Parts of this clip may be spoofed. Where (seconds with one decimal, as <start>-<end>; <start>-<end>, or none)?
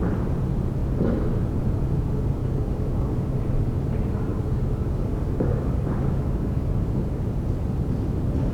2.4-3.4; 4.3-7.3